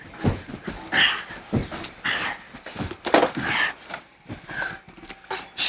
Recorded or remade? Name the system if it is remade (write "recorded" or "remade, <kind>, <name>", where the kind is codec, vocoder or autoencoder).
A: recorded